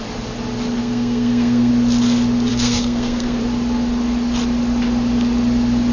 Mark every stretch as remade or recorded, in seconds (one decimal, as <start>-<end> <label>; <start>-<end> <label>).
0.0-0.8 recorded; 0.8-1.7 remade; 1.7-2.5 recorded; 2.5-3.4 remade; 3.4-5.9 recorded